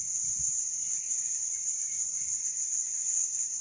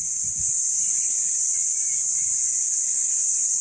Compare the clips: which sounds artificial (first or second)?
first